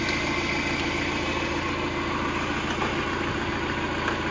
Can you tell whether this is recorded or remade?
recorded